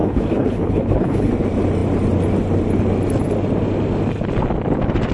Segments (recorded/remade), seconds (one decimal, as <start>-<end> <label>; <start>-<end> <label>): 0.0-1.3 remade; 1.3-5.1 recorded